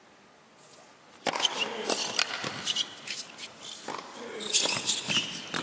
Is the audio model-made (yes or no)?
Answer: no